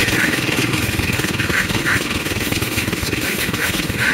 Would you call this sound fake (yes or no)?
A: yes